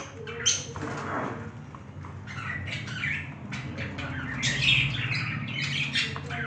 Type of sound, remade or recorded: recorded